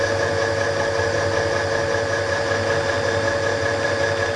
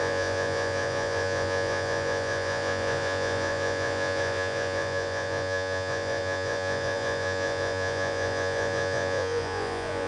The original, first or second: first